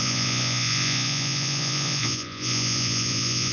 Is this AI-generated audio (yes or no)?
yes